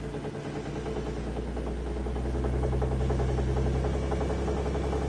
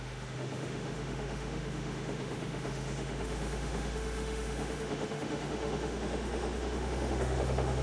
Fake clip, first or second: second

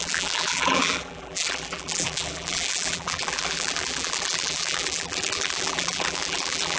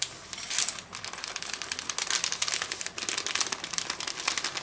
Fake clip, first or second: first